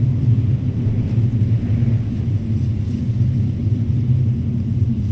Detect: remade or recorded recorded